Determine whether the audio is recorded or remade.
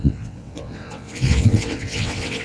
remade